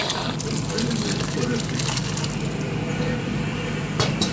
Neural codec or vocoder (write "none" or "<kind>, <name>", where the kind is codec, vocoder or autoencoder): vocoder, BigVGAN v2